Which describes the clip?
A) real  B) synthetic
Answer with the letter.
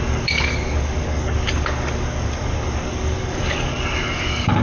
B